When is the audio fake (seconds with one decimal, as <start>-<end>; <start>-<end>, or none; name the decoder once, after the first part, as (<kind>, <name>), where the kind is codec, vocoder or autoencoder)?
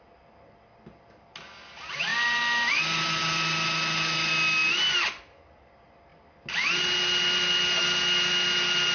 none